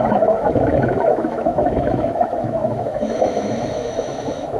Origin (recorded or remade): remade